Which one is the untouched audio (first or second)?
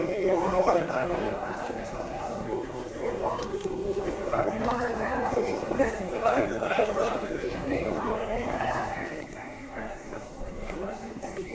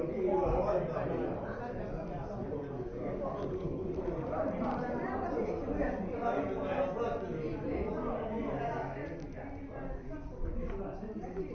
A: second